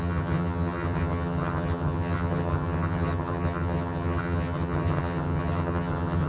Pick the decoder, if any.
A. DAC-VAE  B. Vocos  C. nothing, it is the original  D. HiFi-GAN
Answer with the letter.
D